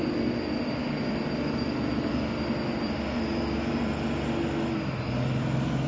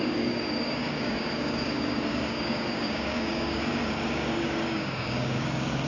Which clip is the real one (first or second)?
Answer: first